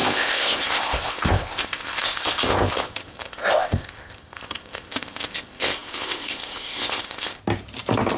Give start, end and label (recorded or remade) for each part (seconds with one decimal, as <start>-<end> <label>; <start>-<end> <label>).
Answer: 0.0-7.4 remade; 7.4-8.2 recorded